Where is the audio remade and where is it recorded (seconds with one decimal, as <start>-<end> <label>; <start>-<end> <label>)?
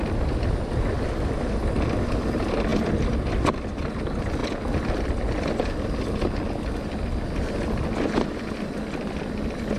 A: 0.0-9.8 recorded